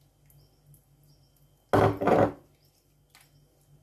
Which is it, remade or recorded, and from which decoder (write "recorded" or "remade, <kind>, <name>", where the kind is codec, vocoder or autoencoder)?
recorded